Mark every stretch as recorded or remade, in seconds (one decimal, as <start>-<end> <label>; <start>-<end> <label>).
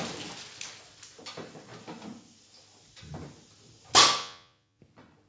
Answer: 0.0-4.2 recorded; 4.2-4.8 remade; 4.8-5.3 recorded